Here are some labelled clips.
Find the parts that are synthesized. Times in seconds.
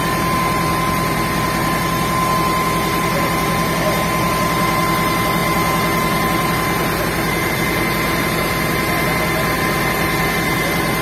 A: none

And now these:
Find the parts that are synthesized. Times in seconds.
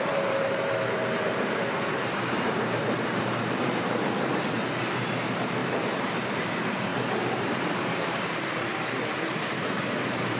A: 0.0-8.7 (vocoder, BigVGAN v2); 9.3-10.4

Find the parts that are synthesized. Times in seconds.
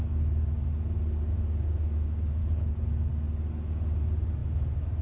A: 2.4-2.9 (codec, HILCodec)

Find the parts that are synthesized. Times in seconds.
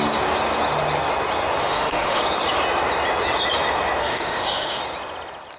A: 1.6-2.2 (autoencoder, DAC-VAE); 4.0-4.8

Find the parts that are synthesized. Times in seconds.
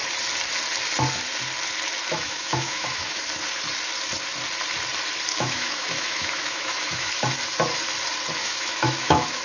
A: 2.1-3.2 (autoencoder, DAC-VAE); 5.3-7.1; 8.4-9.4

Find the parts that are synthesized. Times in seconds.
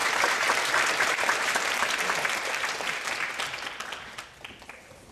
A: 0.0-3.1 (vocoder, BigVGAN v2)